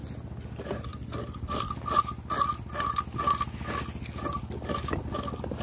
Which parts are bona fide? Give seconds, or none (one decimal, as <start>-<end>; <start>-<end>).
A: 0.0-5.6